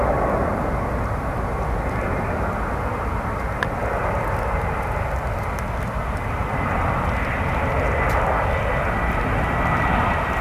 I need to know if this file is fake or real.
real